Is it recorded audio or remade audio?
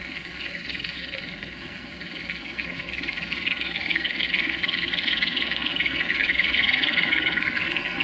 remade